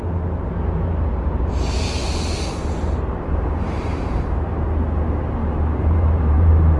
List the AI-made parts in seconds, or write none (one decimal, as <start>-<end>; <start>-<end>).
5.4-6.8